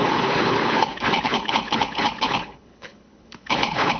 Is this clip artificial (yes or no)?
yes